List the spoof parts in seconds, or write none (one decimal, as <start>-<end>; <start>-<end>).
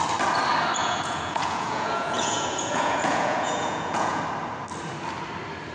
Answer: 0.8-4.2